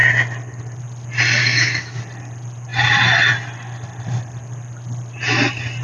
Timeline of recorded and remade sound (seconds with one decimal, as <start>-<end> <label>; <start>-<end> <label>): 0.0-1.4 recorded; 1.4-2.0 remade; 2.0-5.8 recorded